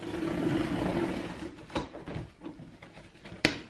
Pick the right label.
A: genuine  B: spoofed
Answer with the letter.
B